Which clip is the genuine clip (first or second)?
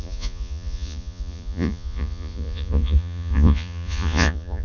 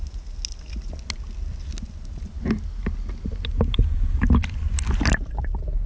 second